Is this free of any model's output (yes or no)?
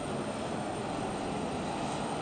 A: yes